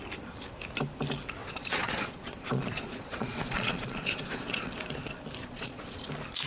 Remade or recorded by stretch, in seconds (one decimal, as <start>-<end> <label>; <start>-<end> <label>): 0.0-1.4 recorded; 1.4-4.7 remade; 4.7-5.4 recorded; 5.4-6.0 remade; 6.0-6.5 recorded